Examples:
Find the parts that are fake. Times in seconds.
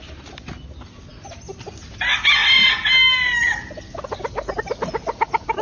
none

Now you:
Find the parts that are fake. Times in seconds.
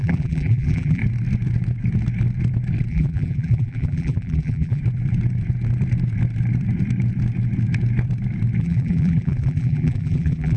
0.0-1.0; 2.9-4.8; 8.6-10.6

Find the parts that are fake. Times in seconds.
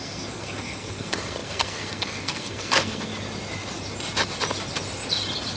0.0-3.1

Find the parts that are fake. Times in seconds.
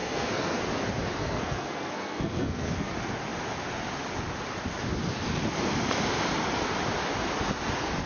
0.0-0.6; 1.2-2.9